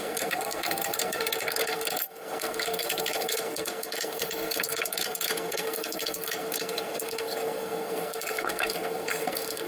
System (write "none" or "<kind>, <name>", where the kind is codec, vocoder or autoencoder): codec, SNAC